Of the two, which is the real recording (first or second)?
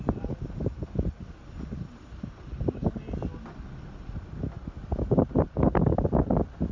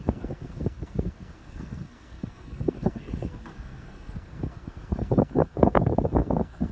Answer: first